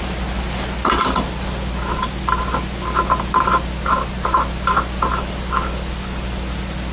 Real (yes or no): yes